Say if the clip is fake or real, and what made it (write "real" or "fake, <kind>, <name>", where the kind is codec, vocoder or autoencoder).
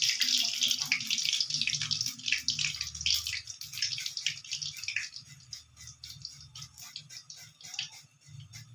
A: real